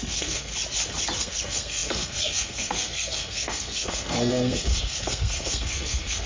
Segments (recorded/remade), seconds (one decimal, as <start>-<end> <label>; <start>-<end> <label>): 0.0-0.5 remade; 0.5-1.2 recorded; 1.2-6.3 remade